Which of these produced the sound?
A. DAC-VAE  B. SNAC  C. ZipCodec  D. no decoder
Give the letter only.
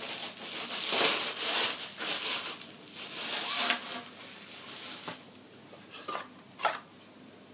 D